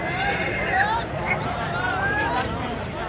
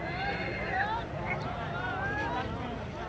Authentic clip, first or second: second